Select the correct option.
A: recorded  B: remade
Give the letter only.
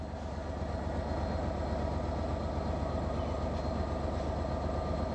A